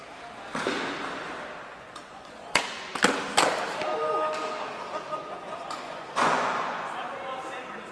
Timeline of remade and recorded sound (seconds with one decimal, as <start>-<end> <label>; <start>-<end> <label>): 0.0-1.7 recorded; 1.7-2.9 remade; 2.9-5.2 recorded; 5.2-6.9 remade; 6.9-7.9 recorded